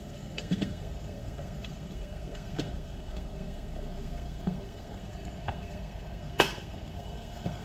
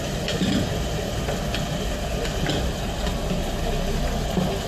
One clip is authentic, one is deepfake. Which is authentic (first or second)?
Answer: second